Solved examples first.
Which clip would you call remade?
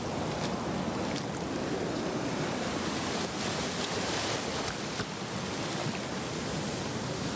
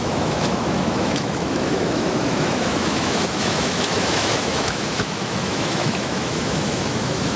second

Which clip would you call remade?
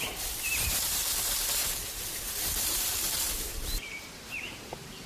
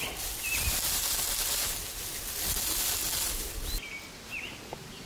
first